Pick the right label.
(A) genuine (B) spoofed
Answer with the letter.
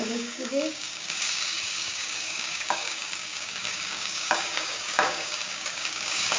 B